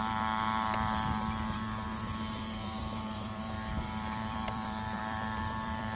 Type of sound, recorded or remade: remade